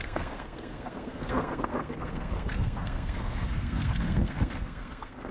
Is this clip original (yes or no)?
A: no